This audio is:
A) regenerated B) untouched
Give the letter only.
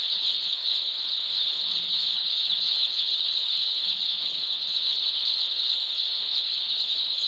A